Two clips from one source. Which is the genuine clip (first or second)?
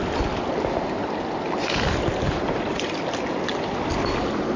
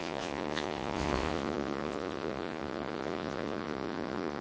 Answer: first